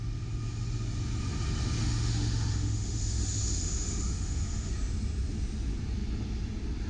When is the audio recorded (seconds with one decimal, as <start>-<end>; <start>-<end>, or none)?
0.0-1.8; 4.7-6.9